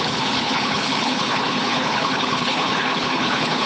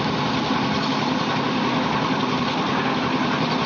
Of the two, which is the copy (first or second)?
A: first